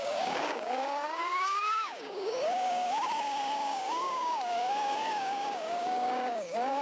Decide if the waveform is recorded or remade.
remade